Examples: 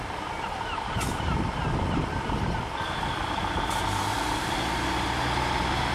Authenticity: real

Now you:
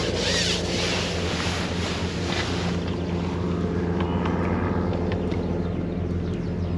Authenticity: real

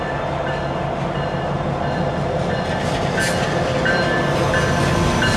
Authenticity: real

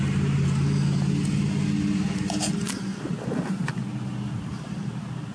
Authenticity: real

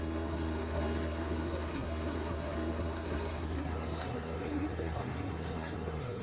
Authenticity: fake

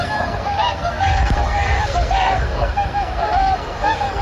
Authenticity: fake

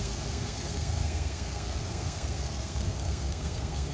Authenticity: fake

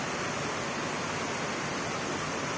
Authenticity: real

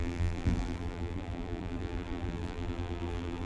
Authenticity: fake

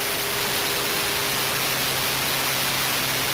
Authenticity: real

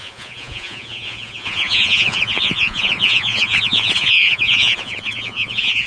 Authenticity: fake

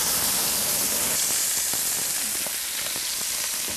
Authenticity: real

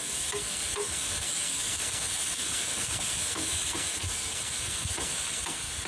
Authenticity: fake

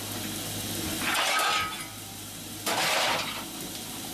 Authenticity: real